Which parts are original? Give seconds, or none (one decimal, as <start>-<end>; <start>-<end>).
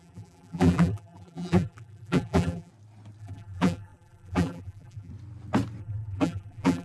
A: 2.7-3.2; 5.1-5.8